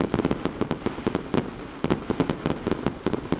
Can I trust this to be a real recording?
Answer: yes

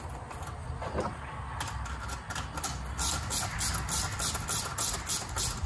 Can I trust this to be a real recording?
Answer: yes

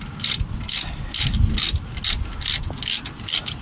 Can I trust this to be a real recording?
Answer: yes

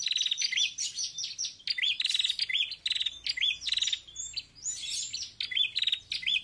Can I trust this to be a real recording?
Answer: yes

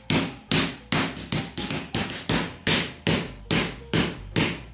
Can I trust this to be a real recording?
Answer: yes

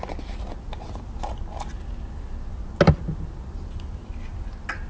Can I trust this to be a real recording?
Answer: yes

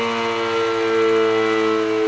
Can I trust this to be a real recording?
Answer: yes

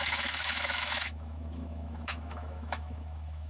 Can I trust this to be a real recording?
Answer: no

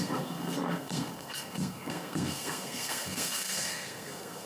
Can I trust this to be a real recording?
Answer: no